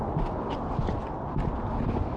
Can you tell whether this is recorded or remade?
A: recorded